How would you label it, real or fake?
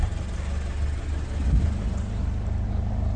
real